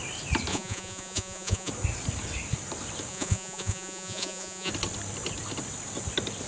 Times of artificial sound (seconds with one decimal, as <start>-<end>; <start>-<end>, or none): 0.5-1.7; 3.1-4.7